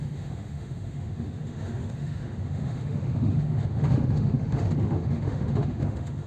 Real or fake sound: fake